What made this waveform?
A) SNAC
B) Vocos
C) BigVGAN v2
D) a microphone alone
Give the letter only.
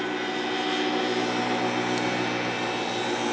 D